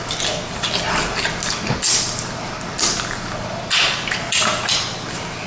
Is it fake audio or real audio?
real